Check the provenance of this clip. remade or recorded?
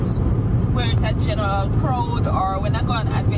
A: recorded